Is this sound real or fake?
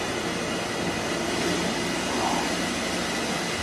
real